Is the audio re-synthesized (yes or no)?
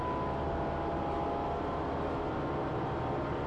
no